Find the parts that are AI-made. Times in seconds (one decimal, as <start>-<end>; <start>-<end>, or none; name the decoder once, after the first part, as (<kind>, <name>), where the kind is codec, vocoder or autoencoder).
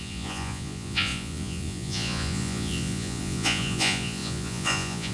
0.0-5.1 (vocoder, Vocos)